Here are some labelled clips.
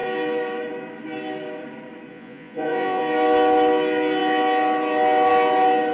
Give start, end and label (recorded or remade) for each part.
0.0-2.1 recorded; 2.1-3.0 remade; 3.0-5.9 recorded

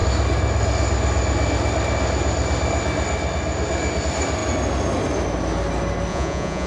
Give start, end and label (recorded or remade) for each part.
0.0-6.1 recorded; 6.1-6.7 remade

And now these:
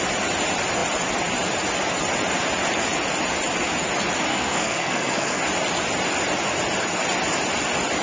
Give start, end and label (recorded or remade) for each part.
0.0-4.3 recorded; 4.3-5.4 remade; 5.4-8.0 recorded

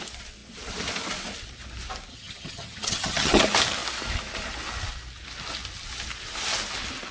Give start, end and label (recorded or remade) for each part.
0.0-2.1 recorded; 2.1-3.4 remade; 3.4-7.1 recorded

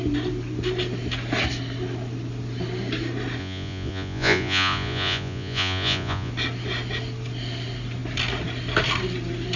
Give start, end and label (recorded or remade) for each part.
0.0-3.4 recorded; 3.4-6.3 remade; 6.3-9.6 recorded

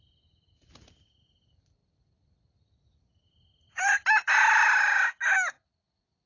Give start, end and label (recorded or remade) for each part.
0.0-6.3 recorded